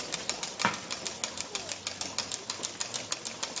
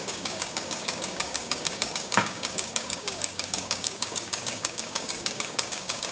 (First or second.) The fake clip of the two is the second